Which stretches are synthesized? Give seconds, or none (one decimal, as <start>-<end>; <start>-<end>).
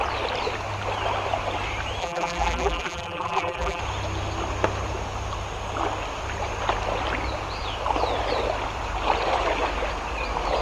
2.0-3.8